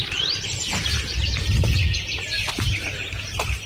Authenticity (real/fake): fake